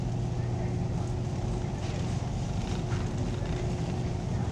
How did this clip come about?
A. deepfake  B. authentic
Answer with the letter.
B